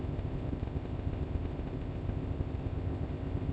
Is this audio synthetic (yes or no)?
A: yes